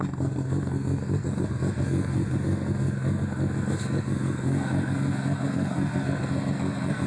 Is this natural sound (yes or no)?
no